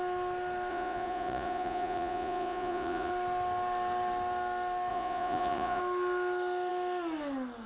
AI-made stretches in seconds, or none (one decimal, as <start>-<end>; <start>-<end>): 0.7-3.1; 4.9-5.8